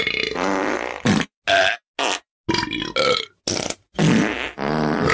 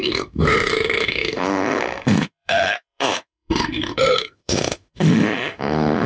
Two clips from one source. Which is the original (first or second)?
first